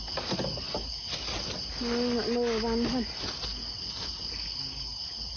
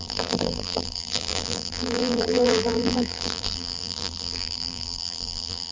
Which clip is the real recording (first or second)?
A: first